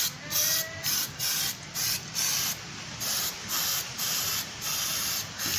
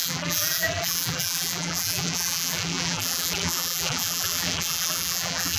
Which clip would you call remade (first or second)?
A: second